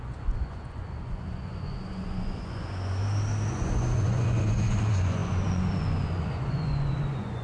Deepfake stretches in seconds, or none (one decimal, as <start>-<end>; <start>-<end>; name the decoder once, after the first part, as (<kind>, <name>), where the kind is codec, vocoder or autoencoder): 0.0-3.0 (vocoder, Vocos); 3.5-7.4